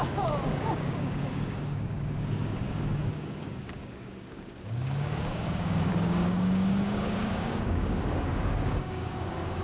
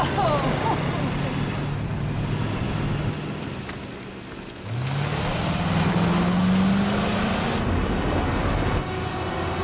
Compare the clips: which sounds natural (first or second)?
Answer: second